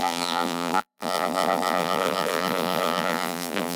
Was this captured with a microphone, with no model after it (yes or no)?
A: no